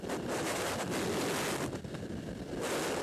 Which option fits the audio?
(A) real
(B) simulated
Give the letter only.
A